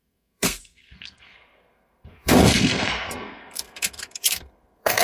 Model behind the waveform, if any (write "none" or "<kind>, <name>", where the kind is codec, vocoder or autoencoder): codec, SNAC